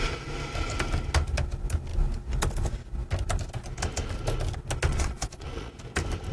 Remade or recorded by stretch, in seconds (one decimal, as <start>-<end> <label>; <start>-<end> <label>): 0.0-4.9 recorded; 4.9-5.7 remade; 5.7-6.3 recorded